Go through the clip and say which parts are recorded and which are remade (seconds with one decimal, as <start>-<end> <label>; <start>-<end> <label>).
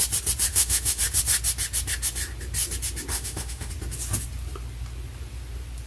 0.0-0.5 recorded; 0.5-1.0 remade; 1.0-3.1 recorded; 3.1-3.7 remade; 3.7-5.9 recorded